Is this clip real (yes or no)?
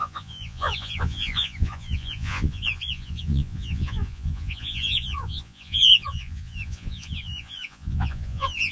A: no